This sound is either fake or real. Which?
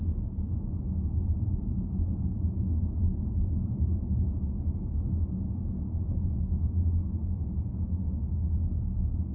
real